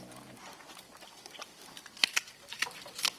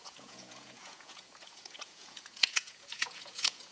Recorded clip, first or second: first